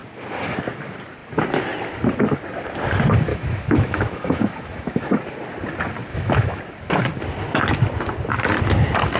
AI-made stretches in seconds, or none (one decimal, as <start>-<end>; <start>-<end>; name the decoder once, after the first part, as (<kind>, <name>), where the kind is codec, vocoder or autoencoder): 3.3-5.2 (autoencoder, DAC-VAE); 6.1-6.6

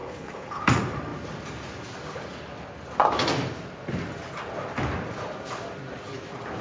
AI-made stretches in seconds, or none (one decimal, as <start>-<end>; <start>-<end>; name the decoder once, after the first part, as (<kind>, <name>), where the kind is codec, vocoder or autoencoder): 0.0-0.6 (codec, HILCodec)

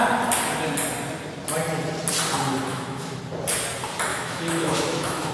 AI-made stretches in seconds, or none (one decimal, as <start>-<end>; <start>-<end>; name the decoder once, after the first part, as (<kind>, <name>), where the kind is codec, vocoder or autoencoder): 2.7-3.2 (autoencoder, DAC-VAE); 4.1-5.3

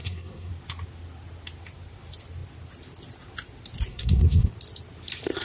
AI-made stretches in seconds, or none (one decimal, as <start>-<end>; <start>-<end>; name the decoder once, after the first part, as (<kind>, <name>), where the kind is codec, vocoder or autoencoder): 0.0-0.5 (codec, SNAC); 3.9-4.5